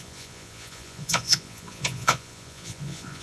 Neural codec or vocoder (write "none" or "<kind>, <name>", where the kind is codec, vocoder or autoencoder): vocoder, Vocos